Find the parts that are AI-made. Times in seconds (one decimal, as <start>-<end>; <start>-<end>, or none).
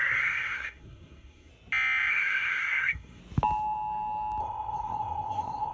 0.0-1.5; 2.1-3.2; 4.4-5.7